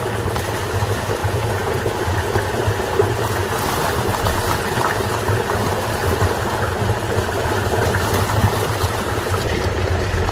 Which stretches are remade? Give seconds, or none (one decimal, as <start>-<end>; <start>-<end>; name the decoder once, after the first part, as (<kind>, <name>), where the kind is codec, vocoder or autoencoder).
1.2-1.8 (vocoder, Vocos)